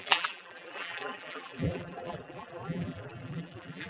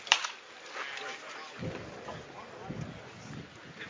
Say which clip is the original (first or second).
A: second